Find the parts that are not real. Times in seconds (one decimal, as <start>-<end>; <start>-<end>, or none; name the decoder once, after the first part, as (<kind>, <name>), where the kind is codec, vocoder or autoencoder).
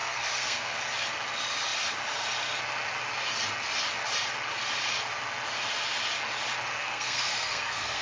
0.0-0.8 (codec, SNAC); 6.8-8.0